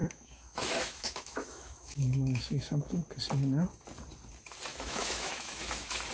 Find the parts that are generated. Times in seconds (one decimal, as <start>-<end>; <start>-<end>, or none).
0.0-3.0; 4.7-6.1